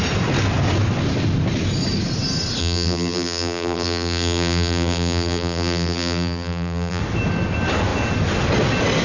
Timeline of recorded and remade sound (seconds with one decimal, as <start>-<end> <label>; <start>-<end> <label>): 0.0-2.6 recorded; 2.6-7.0 remade; 7.0-9.0 recorded